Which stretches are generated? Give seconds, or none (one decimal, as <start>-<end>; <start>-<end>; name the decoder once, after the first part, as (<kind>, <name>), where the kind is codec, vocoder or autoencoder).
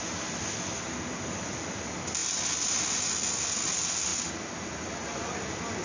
none